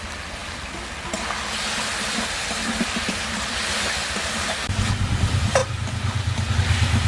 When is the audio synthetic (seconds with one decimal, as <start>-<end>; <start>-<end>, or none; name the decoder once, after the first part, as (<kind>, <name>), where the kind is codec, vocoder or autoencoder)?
none